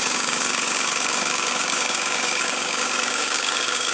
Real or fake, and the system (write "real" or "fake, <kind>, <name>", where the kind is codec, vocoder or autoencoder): fake, codec, DAC